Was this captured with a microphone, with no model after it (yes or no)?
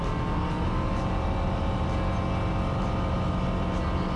yes